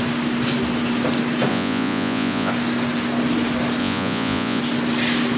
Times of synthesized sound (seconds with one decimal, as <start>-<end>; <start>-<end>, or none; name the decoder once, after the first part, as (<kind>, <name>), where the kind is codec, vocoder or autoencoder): 1.5-2.5 (vocoder, Vocos); 3.8-4.6